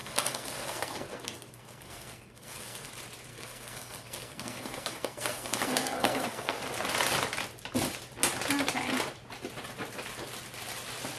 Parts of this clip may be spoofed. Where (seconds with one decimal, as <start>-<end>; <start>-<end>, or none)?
0.0-2.9; 3.3-6.6